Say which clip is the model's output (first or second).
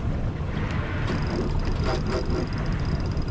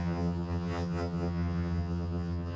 second